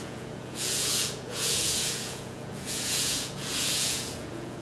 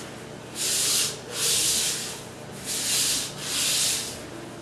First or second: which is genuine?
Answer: second